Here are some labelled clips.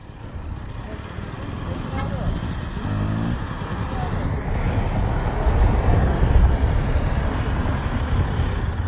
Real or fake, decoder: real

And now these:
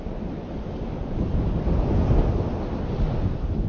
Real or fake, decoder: real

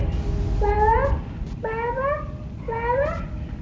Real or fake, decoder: real